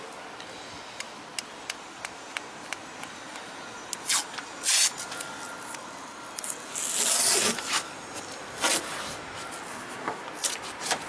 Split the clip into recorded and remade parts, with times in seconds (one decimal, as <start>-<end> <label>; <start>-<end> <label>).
0.0-9.7 recorded; 9.7-10.2 remade; 10.2-11.1 recorded